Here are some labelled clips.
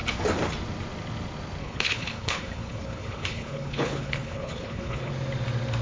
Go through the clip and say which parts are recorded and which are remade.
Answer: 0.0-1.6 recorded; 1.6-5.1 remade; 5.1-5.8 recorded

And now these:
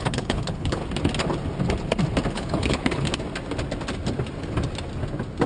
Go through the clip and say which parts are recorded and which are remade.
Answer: 0.0-0.8 remade; 0.8-2.3 recorded; 2.3-3.1 remade; 3.1-5.5 recorded